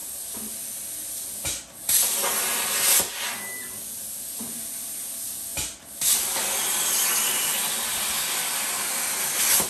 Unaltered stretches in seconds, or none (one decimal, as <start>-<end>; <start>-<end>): 0.0-9.7